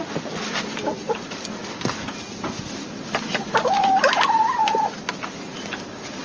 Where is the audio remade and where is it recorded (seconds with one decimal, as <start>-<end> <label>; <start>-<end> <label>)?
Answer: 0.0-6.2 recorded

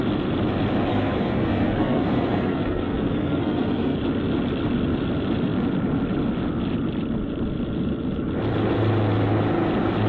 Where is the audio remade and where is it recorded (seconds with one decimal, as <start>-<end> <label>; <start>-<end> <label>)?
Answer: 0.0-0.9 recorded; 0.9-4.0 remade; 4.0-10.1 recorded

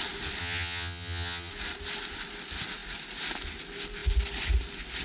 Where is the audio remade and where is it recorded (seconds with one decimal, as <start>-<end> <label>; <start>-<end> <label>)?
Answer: 0.0-0.4 recorded; 0.4-1.5 remade; 1.5-5.0 recorded

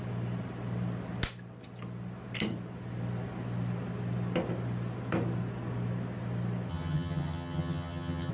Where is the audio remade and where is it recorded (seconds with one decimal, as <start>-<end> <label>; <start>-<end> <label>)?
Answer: 0.0-6.7 recorded; 6.7-8.3 remade